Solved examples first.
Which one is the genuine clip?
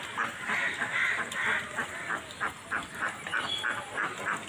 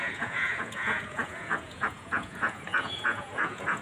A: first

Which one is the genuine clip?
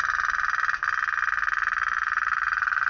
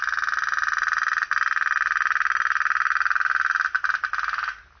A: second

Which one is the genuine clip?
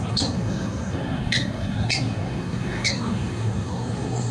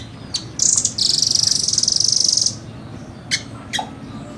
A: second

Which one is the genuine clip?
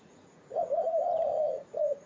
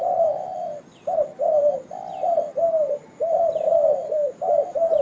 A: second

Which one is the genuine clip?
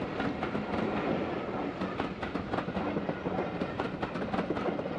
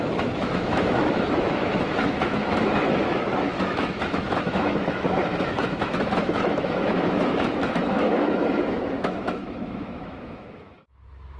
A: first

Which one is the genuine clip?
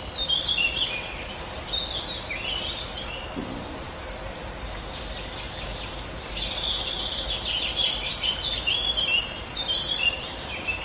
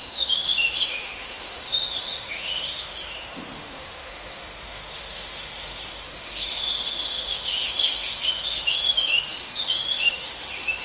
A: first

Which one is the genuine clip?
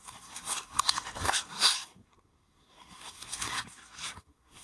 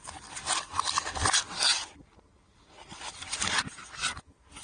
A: second